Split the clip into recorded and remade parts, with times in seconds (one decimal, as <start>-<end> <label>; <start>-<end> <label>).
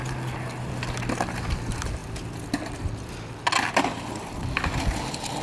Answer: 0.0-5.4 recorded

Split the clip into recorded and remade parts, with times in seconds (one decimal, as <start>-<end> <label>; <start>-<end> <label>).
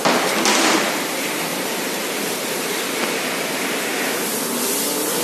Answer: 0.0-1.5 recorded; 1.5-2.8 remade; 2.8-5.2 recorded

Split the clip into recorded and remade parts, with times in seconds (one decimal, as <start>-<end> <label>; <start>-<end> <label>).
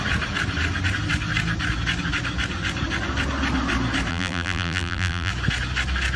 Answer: 0.0-4.1 recorded; 4.1-5.3 remade; 5.3-6.2 recorded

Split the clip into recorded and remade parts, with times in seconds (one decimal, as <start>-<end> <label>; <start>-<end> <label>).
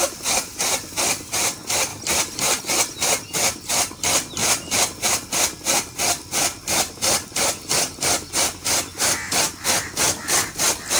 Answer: 0.0-1.9 recorded; 1.9-2.6 remade; 2.6-4.4 recorded; 4.4-5.3 remade; 5.3-11.0 recorded